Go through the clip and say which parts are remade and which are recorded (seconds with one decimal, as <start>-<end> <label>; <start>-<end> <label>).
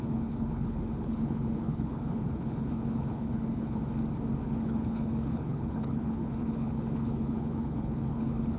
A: 0.0-3.8 remade; 3.8-4.4 recorded; 4.4-8.6 remade